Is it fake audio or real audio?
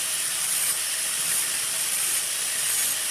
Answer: real